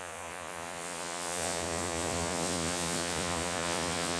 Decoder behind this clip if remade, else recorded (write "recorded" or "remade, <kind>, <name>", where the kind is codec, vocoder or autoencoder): remade, vocoder, Vocos